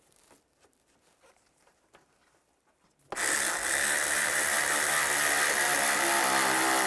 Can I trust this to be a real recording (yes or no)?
yes